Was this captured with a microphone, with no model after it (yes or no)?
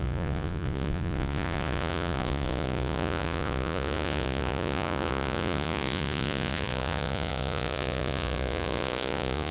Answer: no